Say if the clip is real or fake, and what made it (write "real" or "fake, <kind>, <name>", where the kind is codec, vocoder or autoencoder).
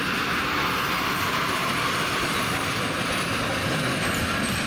real